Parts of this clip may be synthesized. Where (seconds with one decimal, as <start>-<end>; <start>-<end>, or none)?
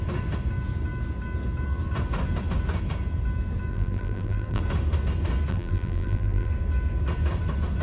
3.7-4.6; 5.5-6.5